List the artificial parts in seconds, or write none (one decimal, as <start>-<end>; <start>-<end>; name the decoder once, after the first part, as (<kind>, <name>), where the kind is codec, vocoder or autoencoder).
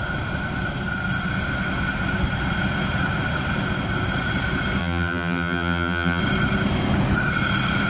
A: 4.8-6.2 (vocoder, BigVGAN v2)